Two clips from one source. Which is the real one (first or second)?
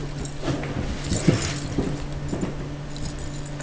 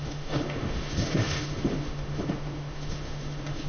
first